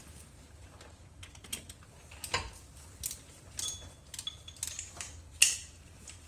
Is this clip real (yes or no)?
yes